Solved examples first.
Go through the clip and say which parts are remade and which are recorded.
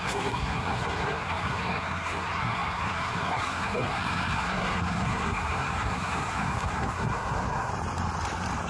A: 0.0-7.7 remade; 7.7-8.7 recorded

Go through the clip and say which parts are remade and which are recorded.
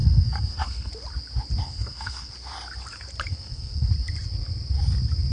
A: 0.0-0.9 remade; 0.9-1.6 recorded; 1.6-2.3 remade; 2.3-3.3 recorded; 3.3-3.9 remade; 3.9-5.3 recorded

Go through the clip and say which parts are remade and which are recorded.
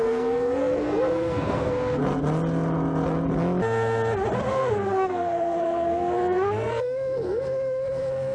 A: 0.0-2.0 remade; 2.0-4.5 recorded; 4.5-8.3 remade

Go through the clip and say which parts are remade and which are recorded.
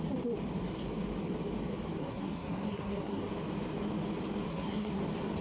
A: 0.0-2.0 recorded; 2.0-3.2 remade; 3.2-4.5 recorded; 4.5-5.0 remade; 5.0-5.4 recorded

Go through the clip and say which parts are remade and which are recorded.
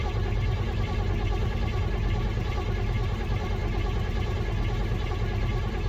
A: 0.0-5.9 recorded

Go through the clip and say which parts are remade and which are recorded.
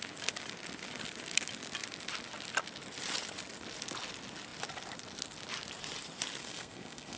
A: 0.0-6.4 recorded; 6.4-7.2 remade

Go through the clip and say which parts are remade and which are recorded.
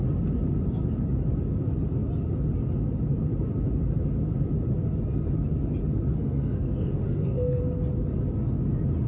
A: 0.0-6.1 recorded; 6.1-7.6 remade; 7.6-9.1 recorded